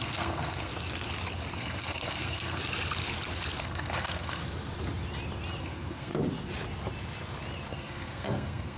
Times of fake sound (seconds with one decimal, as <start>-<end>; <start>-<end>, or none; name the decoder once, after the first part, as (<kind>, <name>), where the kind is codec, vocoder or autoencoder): 0.0-0.7 (codec, SNAC); 1.5-2.6; 3.6-4.4; 5.6-6.1; 7.7-8.8